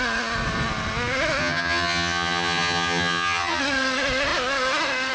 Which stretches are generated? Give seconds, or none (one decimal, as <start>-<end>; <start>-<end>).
1.4-3.6